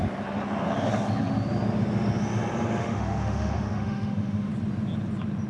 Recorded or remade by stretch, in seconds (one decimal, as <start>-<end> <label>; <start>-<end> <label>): 0.0-2.8 recorded; 2.8-4.5 remade; 4.5-5.5 recorded